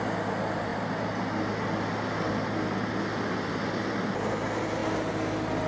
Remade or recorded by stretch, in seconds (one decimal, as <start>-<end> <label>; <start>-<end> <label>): 0.0-5.7 recorded